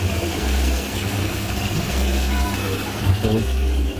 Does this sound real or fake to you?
fake